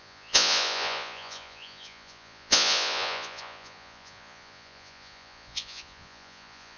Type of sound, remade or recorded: remade